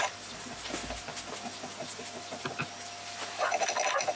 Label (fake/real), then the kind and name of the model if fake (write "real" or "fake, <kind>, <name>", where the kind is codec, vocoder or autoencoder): real